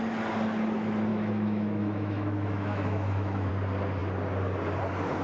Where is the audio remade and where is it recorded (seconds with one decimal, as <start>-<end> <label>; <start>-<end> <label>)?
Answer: 0.0-1.1 recorded; 1.1-3.5 remade; 3.5-5.2 recorded